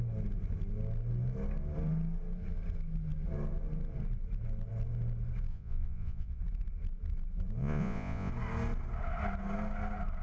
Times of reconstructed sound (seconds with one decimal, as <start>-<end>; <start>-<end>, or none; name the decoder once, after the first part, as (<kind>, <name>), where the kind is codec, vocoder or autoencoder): 5.5-6.4 (vocoder, Vocos); 7.6-8.3